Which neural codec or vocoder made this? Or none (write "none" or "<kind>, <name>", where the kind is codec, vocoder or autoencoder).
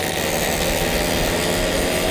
none